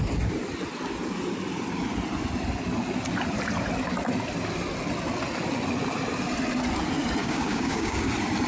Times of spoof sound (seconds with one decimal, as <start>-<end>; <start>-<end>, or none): 7.2-8.1